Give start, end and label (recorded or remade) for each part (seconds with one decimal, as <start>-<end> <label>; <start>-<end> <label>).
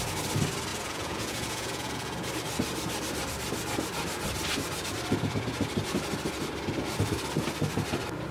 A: 0.0-0.7 recorded; 0.7-2.3 remade; 2.3-8.3 recorded